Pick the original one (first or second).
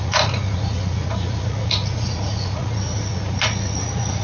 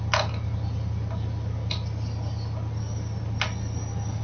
second